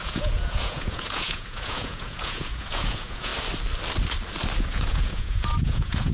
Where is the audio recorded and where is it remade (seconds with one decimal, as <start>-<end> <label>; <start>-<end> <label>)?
0.0-3.3 remade; 3.3-4.6 recorded; 4.6-6.1 remade